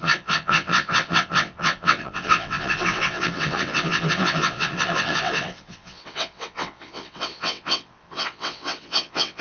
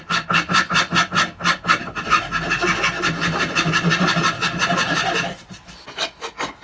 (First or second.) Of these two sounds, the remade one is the first